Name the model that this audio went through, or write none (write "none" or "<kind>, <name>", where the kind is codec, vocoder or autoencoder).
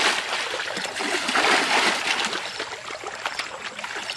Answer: none